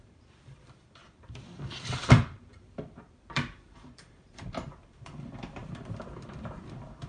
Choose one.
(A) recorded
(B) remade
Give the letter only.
B